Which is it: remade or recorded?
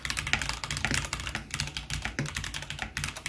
recorded